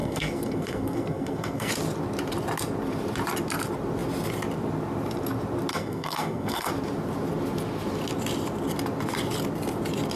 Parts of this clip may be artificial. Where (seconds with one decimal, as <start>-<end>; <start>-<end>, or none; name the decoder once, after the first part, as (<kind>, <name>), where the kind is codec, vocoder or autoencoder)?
0.0-1.7 (codec, SNAC); 5.7-6.7